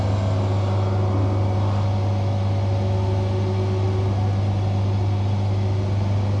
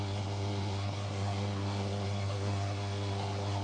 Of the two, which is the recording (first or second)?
first